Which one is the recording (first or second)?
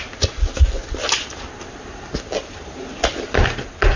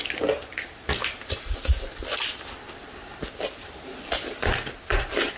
first